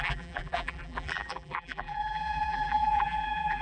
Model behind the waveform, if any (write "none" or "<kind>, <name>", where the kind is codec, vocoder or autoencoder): vocoder, BigVGAN v2